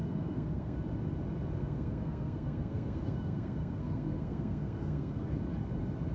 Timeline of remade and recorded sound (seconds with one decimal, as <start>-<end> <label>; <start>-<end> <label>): 0.0-0.8 remade; 0.8-1.6 recorded; 1.6-5.3 remade; 5.3-6.1 recorded